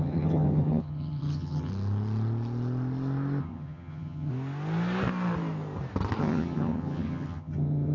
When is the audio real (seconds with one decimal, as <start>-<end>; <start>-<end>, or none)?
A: 1.7-3.4; 4.3-6.2